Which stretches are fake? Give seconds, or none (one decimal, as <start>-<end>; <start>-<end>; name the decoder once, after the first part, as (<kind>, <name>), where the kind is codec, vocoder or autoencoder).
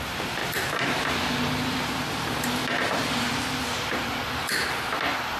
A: none